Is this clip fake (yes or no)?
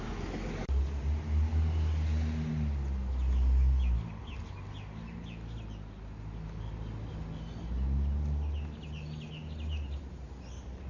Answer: no